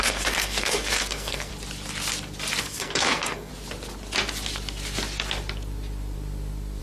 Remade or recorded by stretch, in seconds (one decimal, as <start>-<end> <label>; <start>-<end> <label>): 0.0-1.5 remade; 1.5-2.6 recorded; 2.6-3.5 remade; 3.5-6.8 recorded